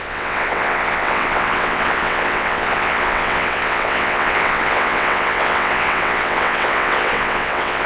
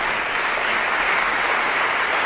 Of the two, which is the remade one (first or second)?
first